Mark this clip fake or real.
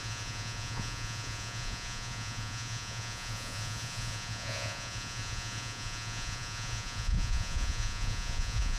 fake